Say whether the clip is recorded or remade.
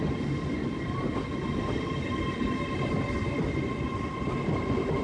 recorded